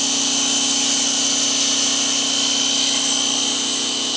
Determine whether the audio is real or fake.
real